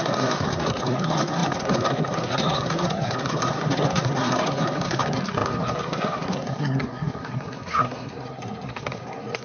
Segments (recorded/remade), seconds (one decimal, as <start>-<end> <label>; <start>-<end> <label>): 0.0-9.4 remade